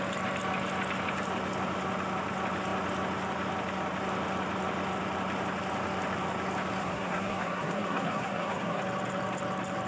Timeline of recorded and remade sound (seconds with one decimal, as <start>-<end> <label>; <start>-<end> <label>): 0.0-6.8 recorded; 6.8-8.8 remade; 8.8-9.9 recorded